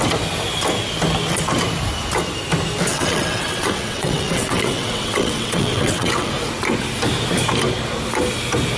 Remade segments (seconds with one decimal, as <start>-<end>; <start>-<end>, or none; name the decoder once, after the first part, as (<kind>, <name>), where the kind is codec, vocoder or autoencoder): 2.9-6.3 (vocoder, WaveNeXt)